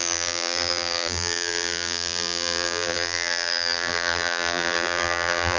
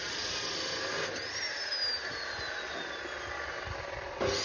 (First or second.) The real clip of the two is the second